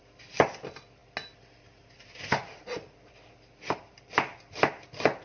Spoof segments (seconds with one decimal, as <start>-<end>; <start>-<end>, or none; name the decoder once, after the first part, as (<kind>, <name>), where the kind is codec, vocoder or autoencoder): none

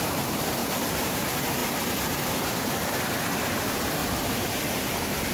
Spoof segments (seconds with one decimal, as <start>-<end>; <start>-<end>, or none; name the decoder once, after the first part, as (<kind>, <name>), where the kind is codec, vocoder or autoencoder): 0.0-5.3 (vocoder, BigVGAN v2)

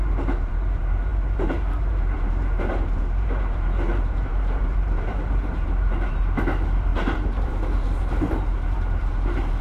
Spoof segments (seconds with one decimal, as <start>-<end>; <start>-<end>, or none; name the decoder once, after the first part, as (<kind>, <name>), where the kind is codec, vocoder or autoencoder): 0.0-9.6 (vocoder, BigVGAN v2)

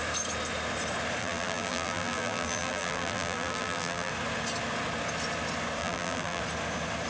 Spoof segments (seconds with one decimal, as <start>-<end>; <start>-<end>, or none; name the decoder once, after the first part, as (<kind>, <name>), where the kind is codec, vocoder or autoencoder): 1.2-4.1 (vocoder, BigVGAN v2); 5.8-6.4

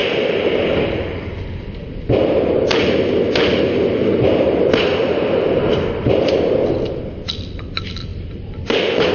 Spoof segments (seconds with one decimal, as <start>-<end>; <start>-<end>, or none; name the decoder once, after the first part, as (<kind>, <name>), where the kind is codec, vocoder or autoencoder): 8.1-9.1 (vocoder, BigVGAN v2)